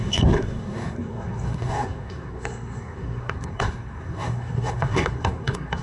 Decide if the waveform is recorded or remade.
remade